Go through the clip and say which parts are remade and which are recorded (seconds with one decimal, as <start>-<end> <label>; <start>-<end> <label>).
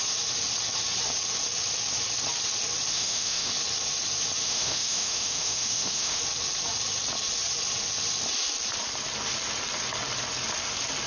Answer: 0.0-2.9 recorded; 2.9-3.5 remade; 3.5-4.4 recorded; 4.4-6.2 remade; 6.2-11.1 recorded